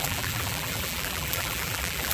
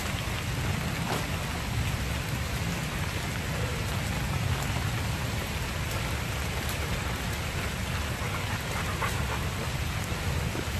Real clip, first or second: second